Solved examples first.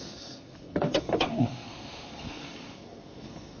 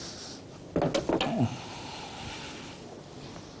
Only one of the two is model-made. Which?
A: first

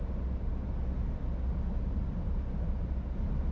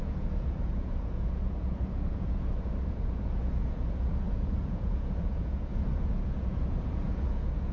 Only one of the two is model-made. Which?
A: second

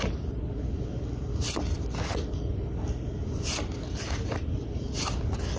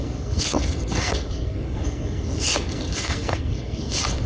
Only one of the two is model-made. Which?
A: second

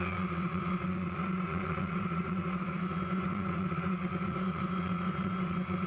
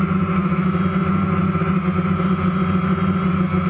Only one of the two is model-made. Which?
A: first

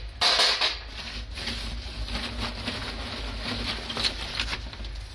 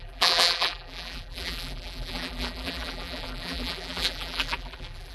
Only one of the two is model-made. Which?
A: second